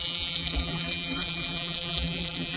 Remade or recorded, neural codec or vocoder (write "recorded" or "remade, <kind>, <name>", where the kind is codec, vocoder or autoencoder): remade, vocoder, BigVGAN v2